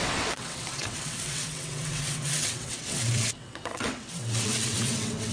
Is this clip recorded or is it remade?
remade